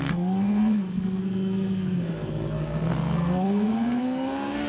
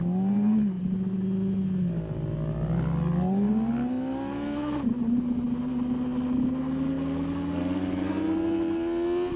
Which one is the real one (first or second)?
second